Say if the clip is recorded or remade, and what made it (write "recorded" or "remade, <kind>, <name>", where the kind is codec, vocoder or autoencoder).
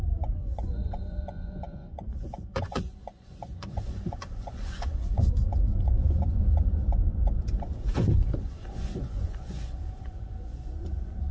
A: remade, vocoder, Vocos